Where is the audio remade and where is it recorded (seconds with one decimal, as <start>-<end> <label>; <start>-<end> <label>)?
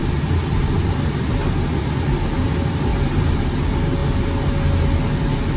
0.0-1.3 remade; 1.3-2.9 recorded; 2.9-3.4 remade; 3.4-5.6 recorded